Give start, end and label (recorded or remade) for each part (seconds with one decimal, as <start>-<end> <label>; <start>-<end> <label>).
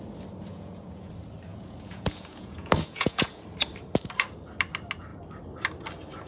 0.0-0.5 recorded; 0.5-1.1 remade; 1.1-1.5 recorded; 1.5-3.4 remade; 3.4-6.3 recorded